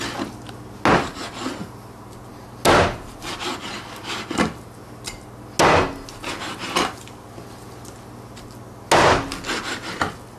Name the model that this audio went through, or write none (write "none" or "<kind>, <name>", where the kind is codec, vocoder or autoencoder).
none